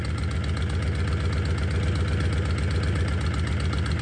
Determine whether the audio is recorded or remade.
recorded